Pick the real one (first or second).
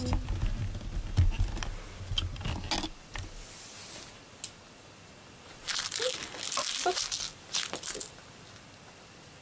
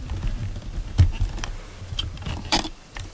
first